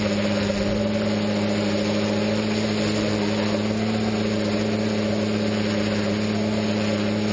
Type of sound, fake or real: real